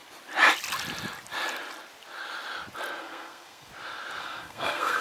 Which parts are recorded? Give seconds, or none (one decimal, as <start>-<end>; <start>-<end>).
0.0-3.0; 3.7-4.2